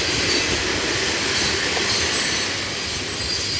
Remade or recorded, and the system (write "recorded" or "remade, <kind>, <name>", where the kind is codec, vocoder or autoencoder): recorded